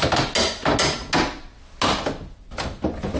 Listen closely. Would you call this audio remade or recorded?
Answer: recorded